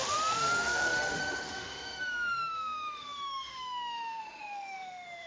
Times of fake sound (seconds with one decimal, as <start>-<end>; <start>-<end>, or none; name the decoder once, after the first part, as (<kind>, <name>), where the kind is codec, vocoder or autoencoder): 0.0-5.3 (autoencoder, DAC-VAE)